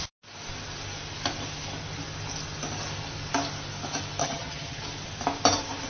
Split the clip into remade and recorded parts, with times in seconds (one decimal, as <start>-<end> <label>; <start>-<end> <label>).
0.0-4.2 recorded; 4.2-4.8 remade; 4.8-5.9 recorded

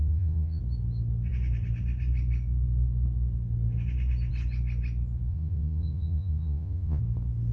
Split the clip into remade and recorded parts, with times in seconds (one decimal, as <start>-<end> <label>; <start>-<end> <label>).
0.0-0.6 remade; 0.6-5.3 recorded; 5.3-7.0 remade; 7.0-7.5 recorded

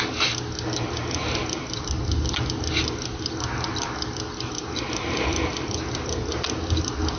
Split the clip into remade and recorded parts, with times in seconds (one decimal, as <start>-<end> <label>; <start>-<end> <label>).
0.0-5.3 recorded; 5.3-6.2 remade; 6.2-7.2 recorded

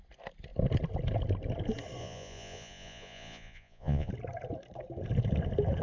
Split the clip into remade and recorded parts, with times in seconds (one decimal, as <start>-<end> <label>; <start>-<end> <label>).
0.0-2.0 recorded; 2.0-4.1 remade; 4.1-5.8 recorded

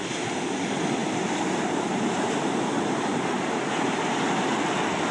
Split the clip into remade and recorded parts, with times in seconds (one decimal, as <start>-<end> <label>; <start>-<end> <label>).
0.0-1.0 recorded; 1.0-4.1 remade; 4.1-5.1 recorded

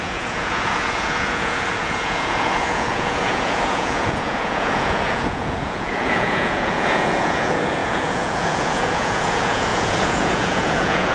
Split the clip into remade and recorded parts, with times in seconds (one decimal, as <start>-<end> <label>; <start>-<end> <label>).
0.0-11.1 remade